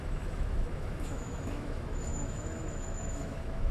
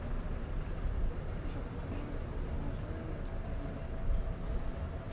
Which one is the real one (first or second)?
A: second